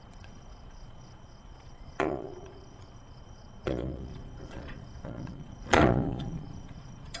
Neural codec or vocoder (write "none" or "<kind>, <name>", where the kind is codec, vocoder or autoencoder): vocoder, Vocos